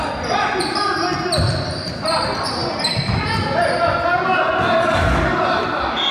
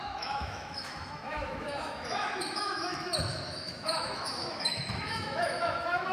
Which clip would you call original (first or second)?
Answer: first